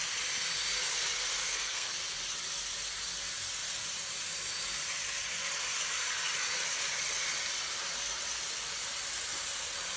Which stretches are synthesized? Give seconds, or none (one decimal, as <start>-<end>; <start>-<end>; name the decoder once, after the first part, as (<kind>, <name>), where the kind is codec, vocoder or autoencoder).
1.4-1.9 (codec, SNAC)